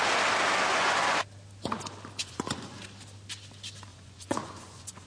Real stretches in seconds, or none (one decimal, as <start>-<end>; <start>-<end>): 0.0-0.7; 1.2-2.2; 2.8-3.9